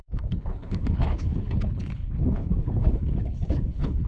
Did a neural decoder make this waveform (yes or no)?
yes